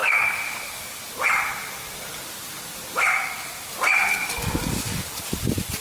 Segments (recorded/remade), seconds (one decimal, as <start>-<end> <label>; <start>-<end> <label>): 0.0-1.0 remade; 1.0-3.1 recorded; 3.1-3.7 remade; 3.7-4.2 recorded; 4.2-5.2 remade; 5.2-5.8 recorded